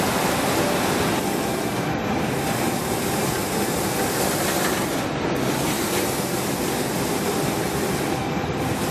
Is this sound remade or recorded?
recorded